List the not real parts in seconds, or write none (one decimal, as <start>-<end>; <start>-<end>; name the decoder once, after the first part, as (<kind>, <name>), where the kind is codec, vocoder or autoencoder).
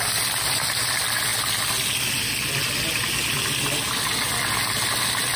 none